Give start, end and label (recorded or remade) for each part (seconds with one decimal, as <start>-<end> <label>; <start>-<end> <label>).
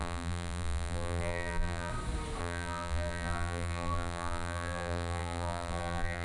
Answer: 0.0-1.9 remade; 1.9-2.4 recorded; 2.4-6.2 remade